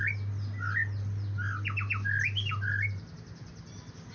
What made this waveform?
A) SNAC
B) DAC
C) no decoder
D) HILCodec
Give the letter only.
C